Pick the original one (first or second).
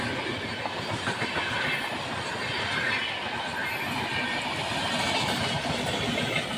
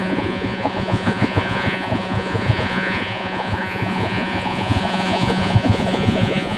first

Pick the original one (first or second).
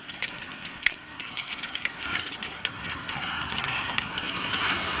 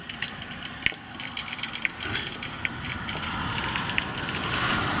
second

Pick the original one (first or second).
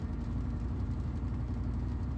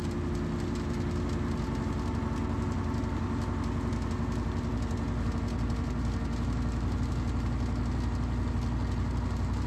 second